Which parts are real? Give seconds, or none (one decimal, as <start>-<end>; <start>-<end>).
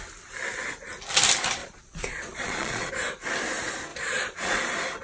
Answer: 0.0-1.6; 2.9-3.9; 4.6-5.0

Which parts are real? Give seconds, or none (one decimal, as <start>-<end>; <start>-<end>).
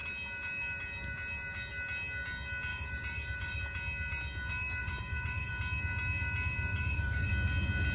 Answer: 0.0-2.7; 3.6-4.8; 5.5-6.7; 7.3-7.9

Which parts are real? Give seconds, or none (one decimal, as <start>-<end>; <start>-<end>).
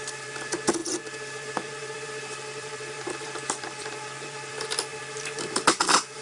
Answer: none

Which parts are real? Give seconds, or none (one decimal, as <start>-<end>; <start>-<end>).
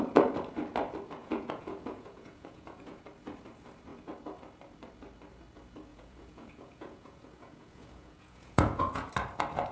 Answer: 0.0-1.2; 3.0-5.9; 9.1-9.7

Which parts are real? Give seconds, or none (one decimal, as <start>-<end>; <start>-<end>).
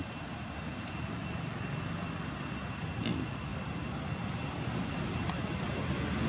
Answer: 0.0-6.3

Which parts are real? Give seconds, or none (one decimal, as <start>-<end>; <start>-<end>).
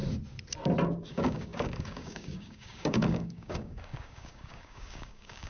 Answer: 0.0-1.1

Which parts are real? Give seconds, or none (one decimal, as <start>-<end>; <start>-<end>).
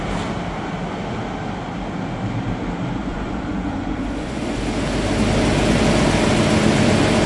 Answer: 0.0-3.0; 4.6-7.3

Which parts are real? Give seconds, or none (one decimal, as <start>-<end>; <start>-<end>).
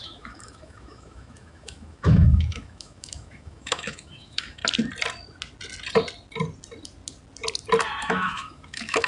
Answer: 4.6-8.0